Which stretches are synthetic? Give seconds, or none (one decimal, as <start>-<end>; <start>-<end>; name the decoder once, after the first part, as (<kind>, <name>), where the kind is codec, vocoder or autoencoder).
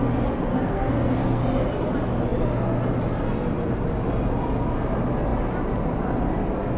0.5-1.4 (codec, SNAC)